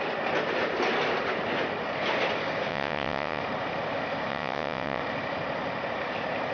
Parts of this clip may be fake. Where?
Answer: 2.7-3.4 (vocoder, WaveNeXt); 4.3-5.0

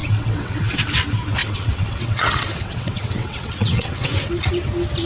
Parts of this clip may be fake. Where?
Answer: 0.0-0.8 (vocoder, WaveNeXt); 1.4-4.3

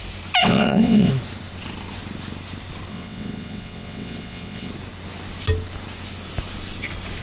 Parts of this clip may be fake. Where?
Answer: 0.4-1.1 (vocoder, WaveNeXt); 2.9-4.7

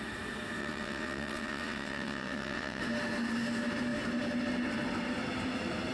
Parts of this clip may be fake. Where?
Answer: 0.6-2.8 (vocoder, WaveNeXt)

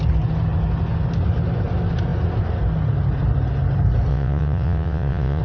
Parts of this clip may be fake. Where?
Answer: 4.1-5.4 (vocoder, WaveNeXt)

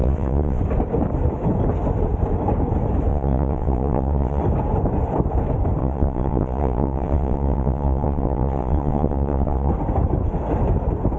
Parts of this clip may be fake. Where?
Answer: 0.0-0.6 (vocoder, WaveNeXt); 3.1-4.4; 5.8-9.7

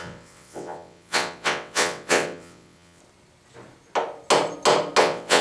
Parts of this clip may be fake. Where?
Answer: 0.0-3.0 (vocoder, WaveNeXt); 5.0-5.4